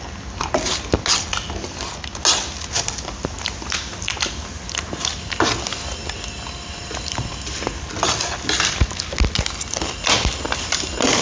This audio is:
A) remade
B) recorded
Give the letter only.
B